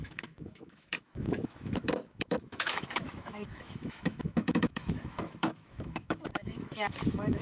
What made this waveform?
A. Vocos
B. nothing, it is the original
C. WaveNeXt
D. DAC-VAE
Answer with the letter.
D